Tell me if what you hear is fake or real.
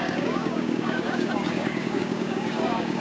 fake